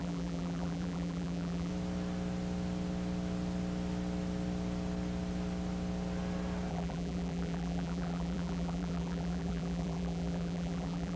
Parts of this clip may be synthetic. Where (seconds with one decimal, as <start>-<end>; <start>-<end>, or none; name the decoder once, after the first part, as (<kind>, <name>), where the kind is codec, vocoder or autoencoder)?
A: 0.0-1.7 (vocoder, BigVGAN v2); 6.7-11.2